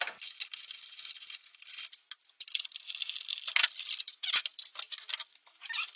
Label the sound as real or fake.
real